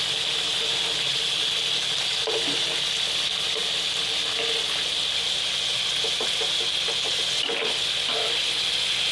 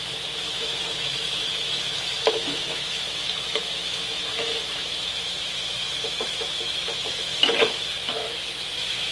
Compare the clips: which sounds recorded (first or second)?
first